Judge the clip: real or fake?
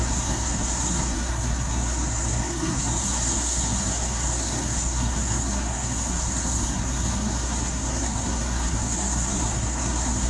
fake